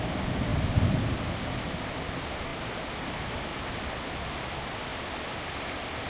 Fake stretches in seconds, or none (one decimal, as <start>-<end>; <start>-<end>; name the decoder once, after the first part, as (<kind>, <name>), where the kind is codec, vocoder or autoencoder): none